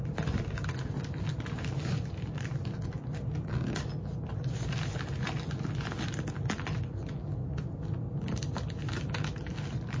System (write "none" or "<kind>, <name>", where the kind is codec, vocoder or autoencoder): none